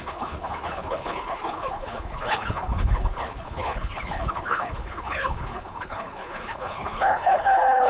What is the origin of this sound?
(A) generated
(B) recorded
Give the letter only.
A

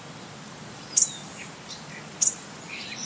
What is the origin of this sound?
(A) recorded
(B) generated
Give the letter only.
A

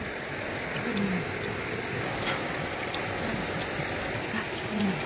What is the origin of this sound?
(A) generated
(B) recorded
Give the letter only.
B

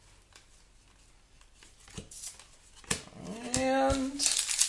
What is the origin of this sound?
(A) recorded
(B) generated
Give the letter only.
A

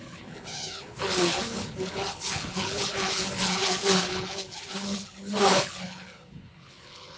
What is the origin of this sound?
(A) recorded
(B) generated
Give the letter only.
B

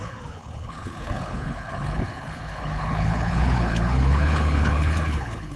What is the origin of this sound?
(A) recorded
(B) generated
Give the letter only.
B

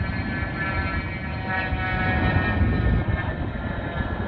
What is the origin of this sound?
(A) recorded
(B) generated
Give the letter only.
A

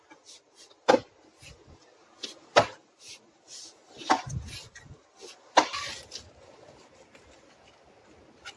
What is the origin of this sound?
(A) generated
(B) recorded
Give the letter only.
B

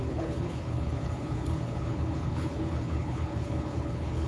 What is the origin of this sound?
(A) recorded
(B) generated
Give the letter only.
B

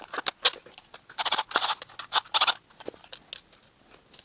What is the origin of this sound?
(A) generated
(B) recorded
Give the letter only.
B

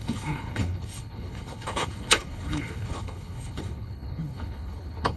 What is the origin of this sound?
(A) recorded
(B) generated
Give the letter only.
B